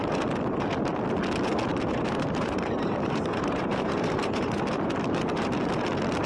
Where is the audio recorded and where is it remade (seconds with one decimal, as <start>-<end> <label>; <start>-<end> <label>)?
0.0-1.7 recorded; 1.7-5.5 remade; 5.5-6.3 recorded